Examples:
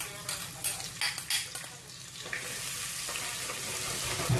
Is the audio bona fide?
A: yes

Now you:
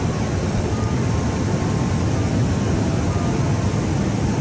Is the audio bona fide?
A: yes